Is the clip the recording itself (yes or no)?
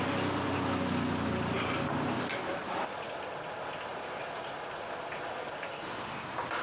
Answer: yes